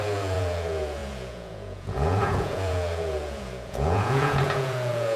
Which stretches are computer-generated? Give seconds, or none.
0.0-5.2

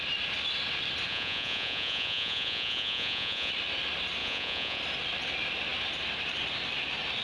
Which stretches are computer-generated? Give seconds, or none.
1.1-3.5; 4.2-4.8

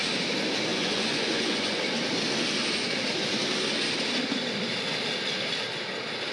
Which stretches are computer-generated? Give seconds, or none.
0.7-1.8